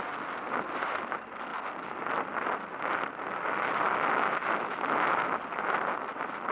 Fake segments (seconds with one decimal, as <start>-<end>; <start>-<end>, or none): none